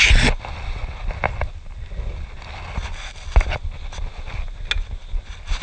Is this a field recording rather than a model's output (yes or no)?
yes